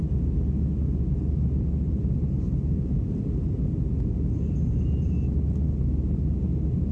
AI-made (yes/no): no